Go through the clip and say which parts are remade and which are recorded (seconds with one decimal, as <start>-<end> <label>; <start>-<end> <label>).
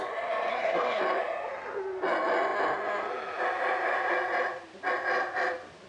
0.0-0.5 recorded; 0.5-1.0 remade; 1.0-5.9 recorded